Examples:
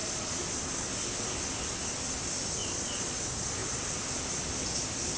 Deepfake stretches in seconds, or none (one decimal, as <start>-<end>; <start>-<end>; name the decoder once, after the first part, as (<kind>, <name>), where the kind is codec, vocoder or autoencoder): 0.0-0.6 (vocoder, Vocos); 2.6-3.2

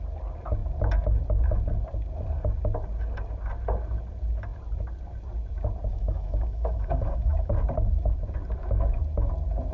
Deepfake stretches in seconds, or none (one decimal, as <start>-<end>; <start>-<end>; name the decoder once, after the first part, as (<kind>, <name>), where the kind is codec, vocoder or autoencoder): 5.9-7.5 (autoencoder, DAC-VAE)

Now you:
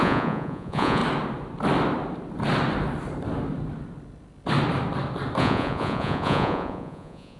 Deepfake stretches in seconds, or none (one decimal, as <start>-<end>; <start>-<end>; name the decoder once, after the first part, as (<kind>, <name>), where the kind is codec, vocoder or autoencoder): 0.0-1.0 (vocoder, Vocos); 5.4-7.4

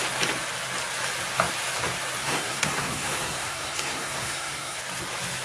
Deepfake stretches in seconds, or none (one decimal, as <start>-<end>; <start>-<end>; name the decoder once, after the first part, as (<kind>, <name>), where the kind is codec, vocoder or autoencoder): 2.2-4.8 (codec, SNAC)